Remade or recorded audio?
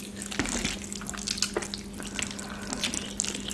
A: recorded